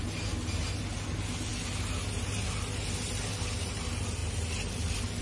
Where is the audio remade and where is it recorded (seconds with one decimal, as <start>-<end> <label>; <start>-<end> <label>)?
0.0-5.2 recorded